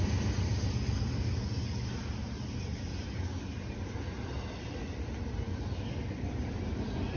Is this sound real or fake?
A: real